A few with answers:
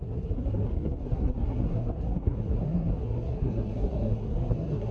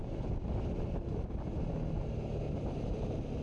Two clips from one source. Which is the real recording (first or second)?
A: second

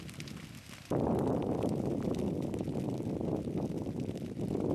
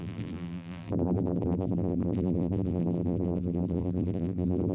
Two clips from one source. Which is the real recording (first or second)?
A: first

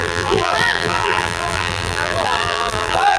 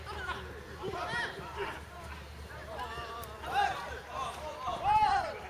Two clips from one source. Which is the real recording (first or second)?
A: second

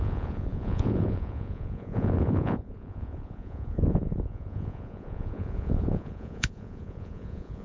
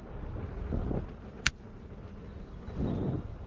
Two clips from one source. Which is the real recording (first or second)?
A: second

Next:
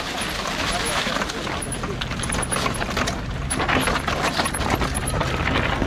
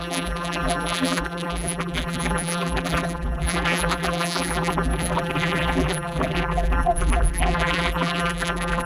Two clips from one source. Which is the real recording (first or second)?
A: first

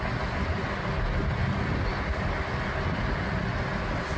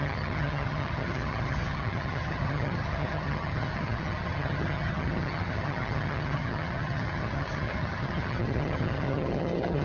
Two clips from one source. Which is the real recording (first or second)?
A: first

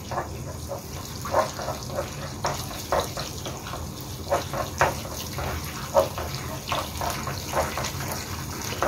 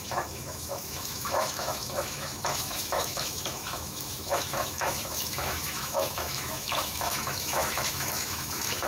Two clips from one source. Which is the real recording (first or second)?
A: first